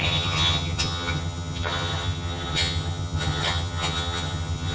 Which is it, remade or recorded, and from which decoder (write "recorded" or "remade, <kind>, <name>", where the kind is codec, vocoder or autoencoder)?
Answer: remade, vocoder, HiFi-GAN